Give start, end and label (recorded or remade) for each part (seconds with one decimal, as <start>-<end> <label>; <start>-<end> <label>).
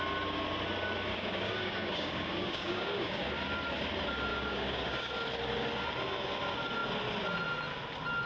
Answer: 0.0-1.1 recorded; 1.1-3.3 remade; 3.3-4.3 recorded; 4.3-5.1 remade; 5.1-8.3 recorded